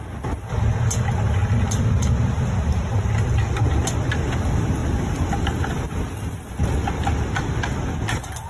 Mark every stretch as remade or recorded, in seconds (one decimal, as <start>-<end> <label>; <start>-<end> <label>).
0.0-8.5 recorded